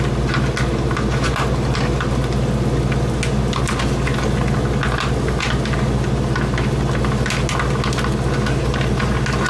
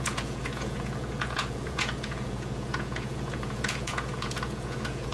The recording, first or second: first